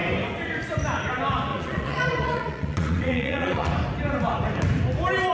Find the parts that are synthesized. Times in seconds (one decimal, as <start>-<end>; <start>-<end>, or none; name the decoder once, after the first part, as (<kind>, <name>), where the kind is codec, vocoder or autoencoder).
1.5-3.7 (vocoder, Vocos)